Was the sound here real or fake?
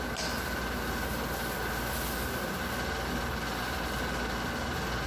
real